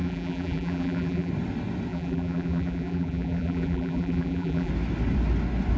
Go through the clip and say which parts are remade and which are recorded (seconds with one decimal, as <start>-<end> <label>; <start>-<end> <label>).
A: 0.0-1.3 remade; 1.3-1.9 recorded; 1.9-4.7 remade; 4.7-5.8 recorded